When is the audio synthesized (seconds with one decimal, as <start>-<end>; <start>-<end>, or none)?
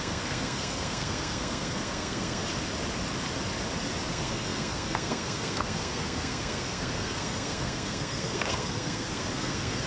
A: 0.0-2.4; 4.1-9.9